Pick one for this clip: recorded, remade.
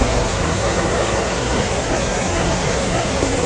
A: remade